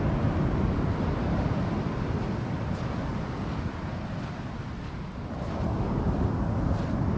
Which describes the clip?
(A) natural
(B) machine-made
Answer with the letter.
A